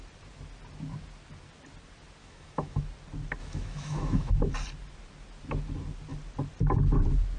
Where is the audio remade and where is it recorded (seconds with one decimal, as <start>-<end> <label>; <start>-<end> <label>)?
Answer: 0.0-2.2 recorded; 2.2-2.8 remade; 2.8-3.4 recorded; 3.4-4.3 remade; 4.3-7.4 recorded